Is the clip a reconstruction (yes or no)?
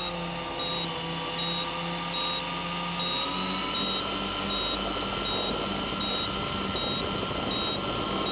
no